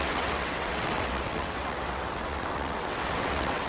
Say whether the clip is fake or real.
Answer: fake